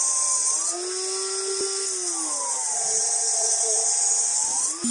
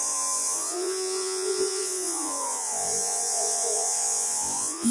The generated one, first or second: second